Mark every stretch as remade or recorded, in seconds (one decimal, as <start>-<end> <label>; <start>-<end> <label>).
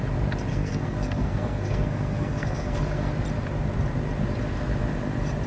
0.0-0.5 recorded; 0.5-3.1 remade; 3.1-5.5 recorded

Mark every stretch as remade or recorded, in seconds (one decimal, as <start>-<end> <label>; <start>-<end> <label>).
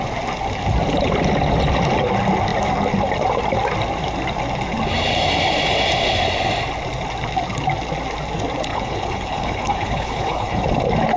0.0-8.7 recorded; 8.7-10.6 remade; 10.6-11.2 recorded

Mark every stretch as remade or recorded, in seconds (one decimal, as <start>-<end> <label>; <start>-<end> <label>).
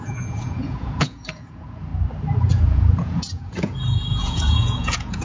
0.0-1.9 remade; 1.9-2.5 recorded; 2.5-5.2 remade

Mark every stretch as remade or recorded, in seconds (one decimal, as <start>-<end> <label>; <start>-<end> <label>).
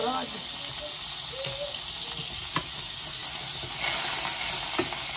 0.0-5.2 recorded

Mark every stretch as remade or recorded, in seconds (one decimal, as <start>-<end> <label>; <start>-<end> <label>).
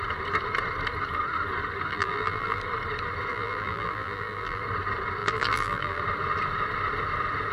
0.0-1.9 recorded; 1.9-2.6 remade; 2.6-3.3 recorded; 3.3-4.6 remade; 4.6-5.2 recorded; 5.2-6.0 remade; 6.0-7.5 recorded